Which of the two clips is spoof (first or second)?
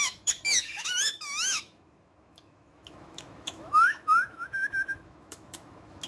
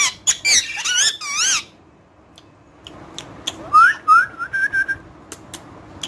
first